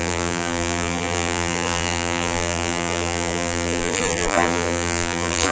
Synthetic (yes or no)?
yes